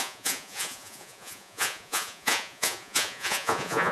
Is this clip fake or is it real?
fake